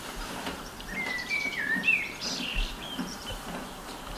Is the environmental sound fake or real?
fake